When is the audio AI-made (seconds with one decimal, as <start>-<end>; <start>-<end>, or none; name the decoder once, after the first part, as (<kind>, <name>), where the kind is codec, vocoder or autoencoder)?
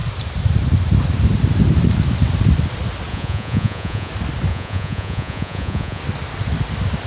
3.1-4.1 (vocoder, Vocos); 4.5-6.0